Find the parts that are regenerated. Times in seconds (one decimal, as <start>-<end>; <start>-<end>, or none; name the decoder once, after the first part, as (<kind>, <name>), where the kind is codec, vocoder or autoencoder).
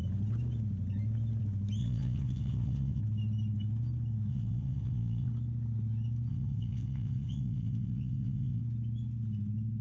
1.8-3.0 (vocoder, WaveNeXt); 4.3-5.3; 6.3-8.6